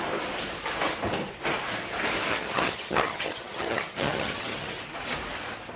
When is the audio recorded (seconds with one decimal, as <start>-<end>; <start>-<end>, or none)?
0.0-2.3; 4.8-5.8